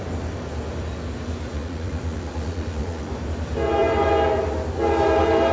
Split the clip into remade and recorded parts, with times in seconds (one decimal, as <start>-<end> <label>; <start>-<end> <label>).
0.0-1.5 recorded; 1.5-3.1 remade; 3.1-5.5 recorded